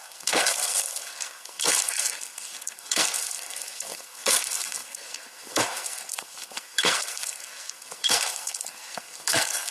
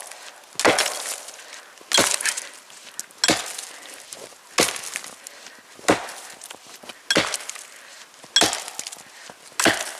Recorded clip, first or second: second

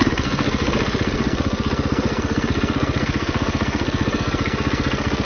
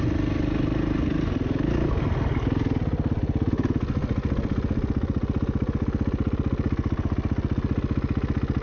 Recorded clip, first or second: second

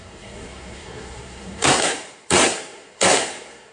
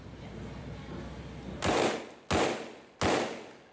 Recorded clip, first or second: second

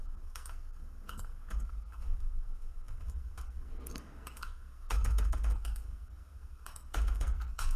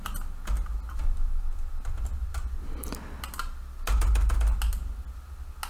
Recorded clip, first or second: second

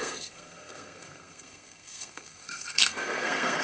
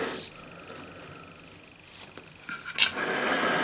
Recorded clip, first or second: second